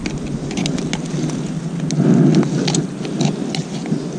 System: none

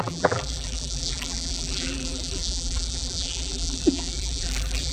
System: vocoder, BigVGAN v2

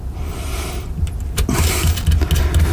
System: none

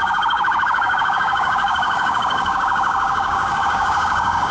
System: codec, DAC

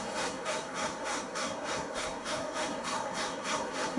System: codec, SNAC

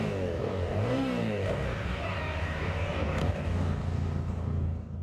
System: codec, DAC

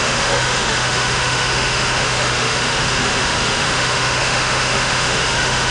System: autoencoder, DAC-VAE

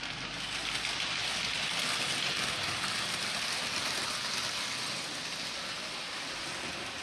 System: none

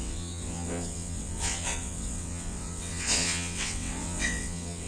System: vocoder, WaveNeXt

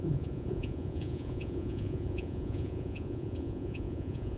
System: vocoder, Vocos